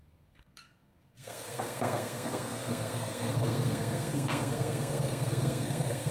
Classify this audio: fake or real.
fake